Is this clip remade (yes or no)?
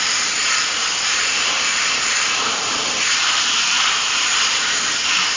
yes